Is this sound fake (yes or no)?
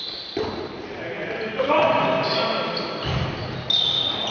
no